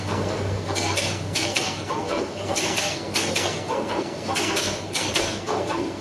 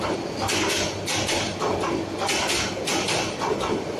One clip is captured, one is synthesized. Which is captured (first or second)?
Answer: second